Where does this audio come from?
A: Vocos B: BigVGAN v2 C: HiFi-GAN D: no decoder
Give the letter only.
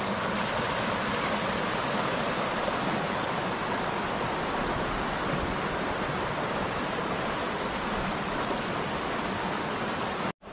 D